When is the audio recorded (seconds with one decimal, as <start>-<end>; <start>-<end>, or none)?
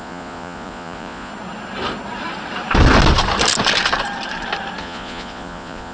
1.3-4.8